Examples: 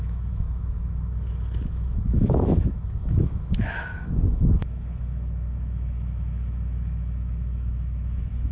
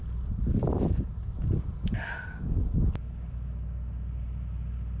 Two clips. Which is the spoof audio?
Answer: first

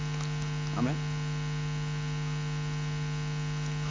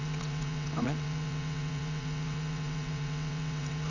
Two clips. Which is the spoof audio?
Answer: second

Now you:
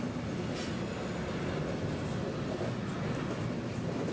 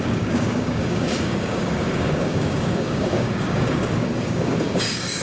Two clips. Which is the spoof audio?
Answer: second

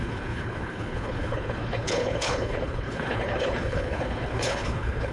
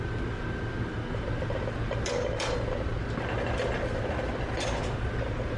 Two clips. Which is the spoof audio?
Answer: first